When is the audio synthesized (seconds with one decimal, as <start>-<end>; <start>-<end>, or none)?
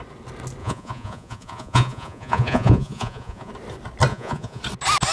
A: 0.6-3.5; 4.1-4.6